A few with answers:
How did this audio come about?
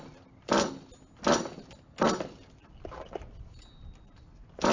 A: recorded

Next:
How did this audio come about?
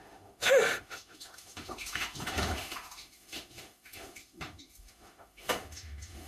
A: remade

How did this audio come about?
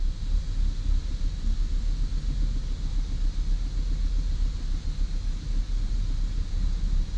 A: recorded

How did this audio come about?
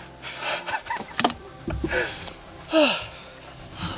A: recorded